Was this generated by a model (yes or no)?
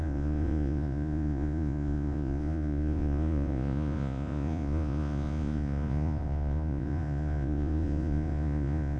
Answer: yes